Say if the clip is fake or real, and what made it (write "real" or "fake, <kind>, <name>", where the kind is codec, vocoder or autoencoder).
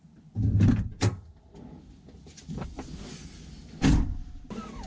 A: real